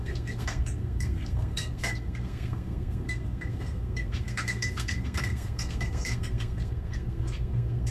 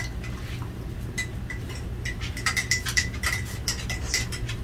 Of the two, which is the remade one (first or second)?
first